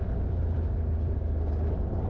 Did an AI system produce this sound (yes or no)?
no